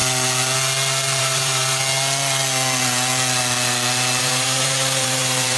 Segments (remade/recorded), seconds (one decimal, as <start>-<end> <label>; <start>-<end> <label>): 0.0-1.2 recorded; 1.2-1.8 remade; 1.8-4.2 recorded; 4.2-5.6 remade